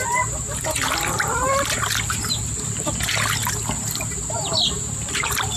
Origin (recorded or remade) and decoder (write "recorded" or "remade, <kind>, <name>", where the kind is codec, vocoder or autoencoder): recorded